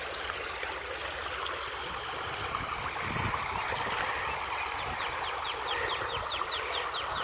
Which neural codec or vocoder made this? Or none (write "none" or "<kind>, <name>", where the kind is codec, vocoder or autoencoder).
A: vocoder, BigVGAN v2